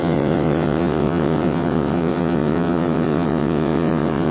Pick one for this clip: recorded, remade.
remade